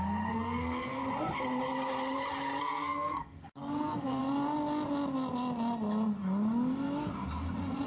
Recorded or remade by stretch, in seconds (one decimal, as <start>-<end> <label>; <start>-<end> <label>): 0.0-1.0 remade; 1.0-2.6 recorded; 2.6-4.2 remade; 4.2-7.9 recorded